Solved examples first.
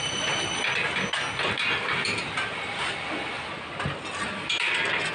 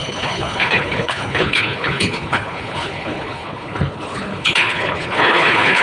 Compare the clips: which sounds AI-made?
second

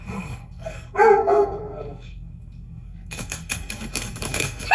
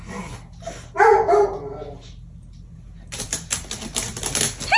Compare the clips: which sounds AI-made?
first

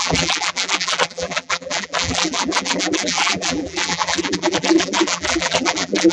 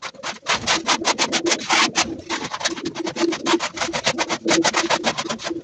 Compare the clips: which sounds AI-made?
first